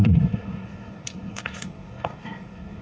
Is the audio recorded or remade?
remade